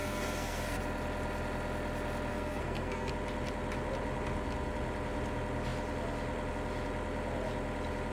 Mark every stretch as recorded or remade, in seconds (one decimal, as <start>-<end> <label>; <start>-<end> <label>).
0.0-0.8 remade; 0.8-2.3 recorded; 2.3-3.1 remade; 3.1-8.1 recorded